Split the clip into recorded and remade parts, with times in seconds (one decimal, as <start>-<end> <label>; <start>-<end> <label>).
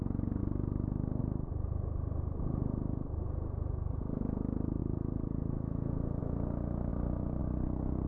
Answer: 0.0-8.1 recorded